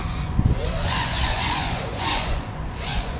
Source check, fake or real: fake